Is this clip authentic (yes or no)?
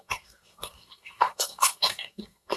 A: no